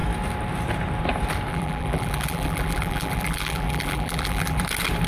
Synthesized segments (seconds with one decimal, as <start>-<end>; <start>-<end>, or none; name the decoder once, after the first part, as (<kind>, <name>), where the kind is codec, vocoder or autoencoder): 1.5-4.6 (vocoder, BigVGAN v2)

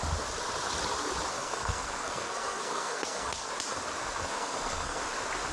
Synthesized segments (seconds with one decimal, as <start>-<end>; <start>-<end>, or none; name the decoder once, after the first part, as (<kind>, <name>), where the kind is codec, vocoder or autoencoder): 1.3-3.5 (codec, SNAC); 4.0-5.0

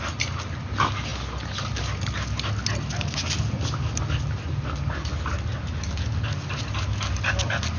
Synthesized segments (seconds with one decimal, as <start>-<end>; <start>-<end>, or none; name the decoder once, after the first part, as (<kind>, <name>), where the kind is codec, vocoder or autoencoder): none

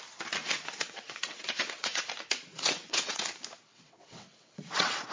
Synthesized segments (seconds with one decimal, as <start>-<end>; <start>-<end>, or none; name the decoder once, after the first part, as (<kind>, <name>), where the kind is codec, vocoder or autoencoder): 0.4-2.0 (vocoder, WaveNeXt); 2.5-3.3; 3.7-5.1

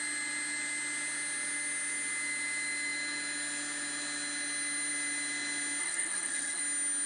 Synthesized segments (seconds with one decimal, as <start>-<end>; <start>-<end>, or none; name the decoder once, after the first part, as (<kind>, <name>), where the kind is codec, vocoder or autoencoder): 5.8-6.6 (codec, SNAC)

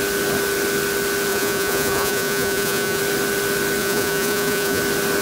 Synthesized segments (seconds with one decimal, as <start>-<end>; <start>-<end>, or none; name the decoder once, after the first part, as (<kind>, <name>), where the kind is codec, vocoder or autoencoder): 1.3-3.0 (vocoder, Vocos); 3.8-4.8